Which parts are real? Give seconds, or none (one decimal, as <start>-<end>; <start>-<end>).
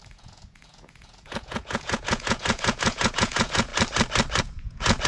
3.7-4.4